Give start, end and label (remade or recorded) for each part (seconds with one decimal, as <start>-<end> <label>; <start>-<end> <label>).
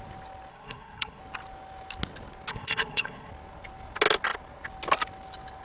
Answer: 0.0-0.5 recorded; 0.5-1.2 remade; 1.2-2.5 recorded; 2.5-3.3 remade; 3.3-5.6 recorded